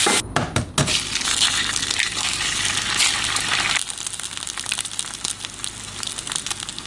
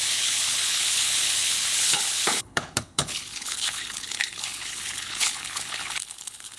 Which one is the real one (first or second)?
first